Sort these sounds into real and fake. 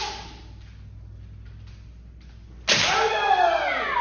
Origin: real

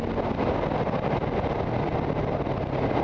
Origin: real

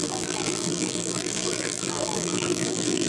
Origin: fake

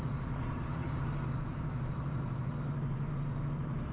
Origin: fake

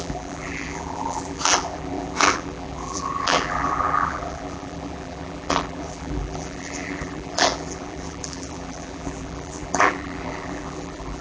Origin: fake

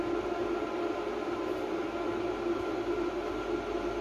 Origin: real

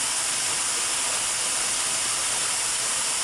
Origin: real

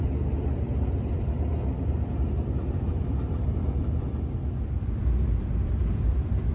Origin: fake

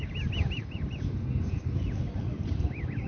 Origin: real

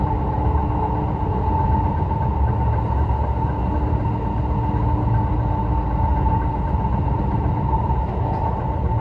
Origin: real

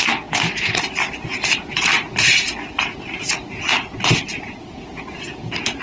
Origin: real